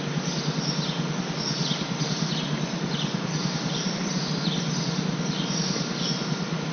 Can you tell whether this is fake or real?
real